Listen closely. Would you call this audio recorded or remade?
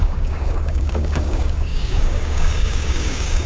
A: remade